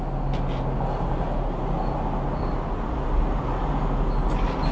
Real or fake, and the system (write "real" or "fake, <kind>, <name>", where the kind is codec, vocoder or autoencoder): real